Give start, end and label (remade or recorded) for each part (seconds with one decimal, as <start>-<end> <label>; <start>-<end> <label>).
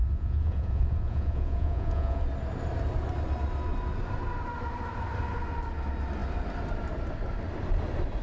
0.0-2.2 remade; 2.2-8.2 recorded